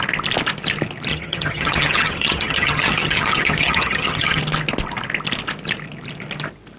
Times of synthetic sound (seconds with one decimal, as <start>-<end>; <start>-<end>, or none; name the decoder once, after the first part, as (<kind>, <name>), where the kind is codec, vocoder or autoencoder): 1.1-4.4 (vocoder, HiFi-GAN)